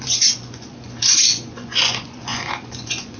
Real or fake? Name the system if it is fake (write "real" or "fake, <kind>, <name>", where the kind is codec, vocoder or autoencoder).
fake, vocoder, Vocos